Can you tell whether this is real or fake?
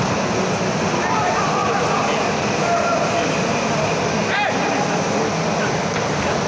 real